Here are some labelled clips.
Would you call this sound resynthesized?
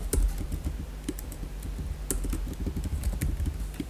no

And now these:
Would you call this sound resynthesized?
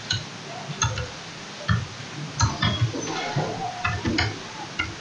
no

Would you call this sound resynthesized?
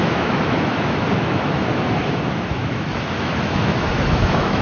yes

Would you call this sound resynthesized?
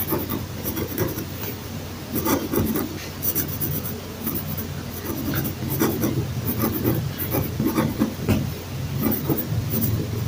no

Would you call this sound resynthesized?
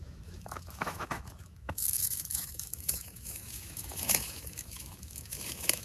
yes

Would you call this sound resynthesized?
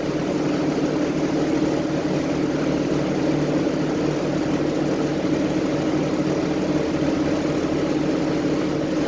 no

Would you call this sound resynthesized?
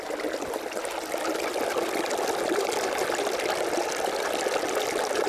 no